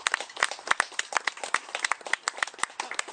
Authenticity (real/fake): real